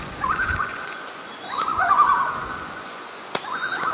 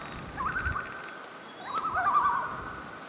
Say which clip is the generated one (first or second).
first